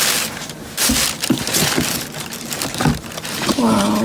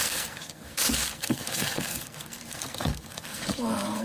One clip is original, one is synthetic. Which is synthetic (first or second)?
second